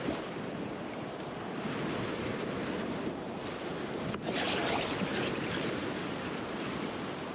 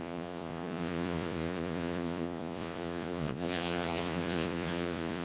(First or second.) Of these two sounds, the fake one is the second